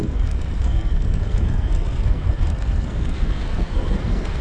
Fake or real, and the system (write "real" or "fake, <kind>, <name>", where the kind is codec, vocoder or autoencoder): fake, codec, SNAC